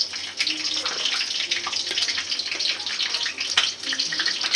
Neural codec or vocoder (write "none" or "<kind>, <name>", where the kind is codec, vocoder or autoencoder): none